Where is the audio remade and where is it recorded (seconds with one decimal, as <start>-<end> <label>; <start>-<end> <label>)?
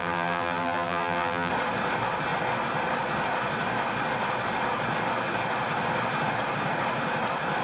0.0-1.5 remade; 1.5-7.6 recorded